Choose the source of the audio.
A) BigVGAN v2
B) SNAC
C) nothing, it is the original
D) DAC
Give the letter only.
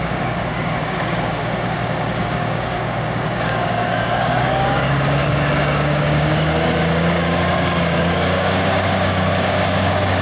D